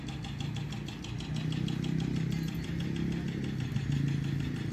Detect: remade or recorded recorded